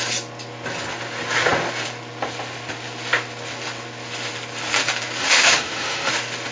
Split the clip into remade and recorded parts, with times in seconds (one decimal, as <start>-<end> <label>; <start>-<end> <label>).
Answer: 0.0-5.2 recorded; 5.2-6.1 remade; 6.1-6.5 recorded